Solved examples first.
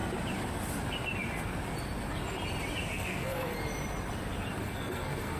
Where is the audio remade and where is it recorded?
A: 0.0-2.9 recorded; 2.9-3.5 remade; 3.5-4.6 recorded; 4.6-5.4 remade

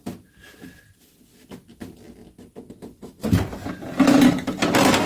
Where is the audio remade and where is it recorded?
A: 0.0-5.1 recorded

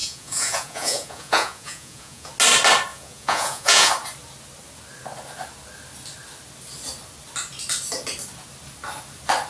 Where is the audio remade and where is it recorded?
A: 0.0-2.3 remade; 2.3-2.9 recorded; 2.9-3.9 remade; 3.9-9.5 recorded

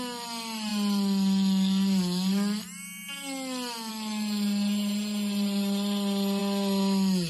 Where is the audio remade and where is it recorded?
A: 0.0-7.3 recorded

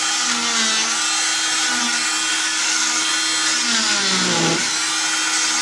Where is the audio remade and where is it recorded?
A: 0.0-2.3 recorded; 2.3-3.1 remade; 3.1-5.6 recorded

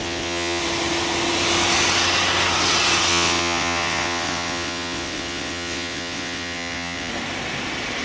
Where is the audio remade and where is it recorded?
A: 0.0-0.6 remade; 0.6-3.1 recorded; 3.1-7.1 remade; 7.1-8.0 recorded

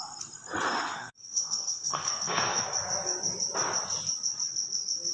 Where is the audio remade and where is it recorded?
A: 0.0-0.9 recorded; 0.9-2.6 remade; 2.6-5.1 recorded